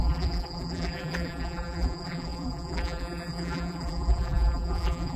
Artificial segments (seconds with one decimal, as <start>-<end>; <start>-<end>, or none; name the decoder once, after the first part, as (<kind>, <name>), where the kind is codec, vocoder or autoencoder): 0.0-5.2 (vocoder, BigVGAN v2)